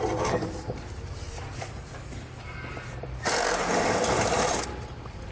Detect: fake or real fake